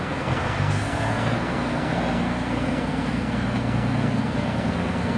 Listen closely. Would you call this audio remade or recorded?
remade